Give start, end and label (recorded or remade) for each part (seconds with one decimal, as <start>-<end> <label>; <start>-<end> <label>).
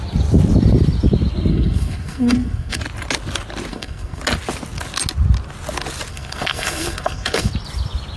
0.0-1.5 recorded; 1.5-2.8 remade; 2.8-3.7 recorded; 3.7-4.2 remade; 4.2-6.1 recorded; 6.1-7.5 remade; 7.5-8.2 recorded